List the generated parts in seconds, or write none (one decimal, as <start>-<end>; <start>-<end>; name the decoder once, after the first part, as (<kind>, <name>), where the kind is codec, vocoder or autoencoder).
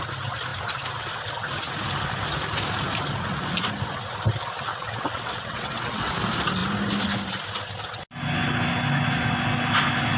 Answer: 4.7-6.1 (vocoder, WaveNeXt)